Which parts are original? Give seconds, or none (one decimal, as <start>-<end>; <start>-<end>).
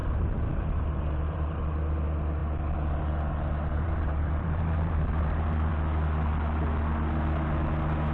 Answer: 1.6-3.7; 5.7-8.1